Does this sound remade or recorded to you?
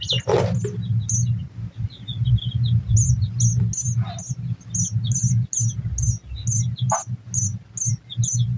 recorded